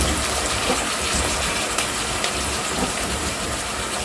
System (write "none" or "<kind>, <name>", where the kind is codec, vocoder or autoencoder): vocoder, BigVGAN v2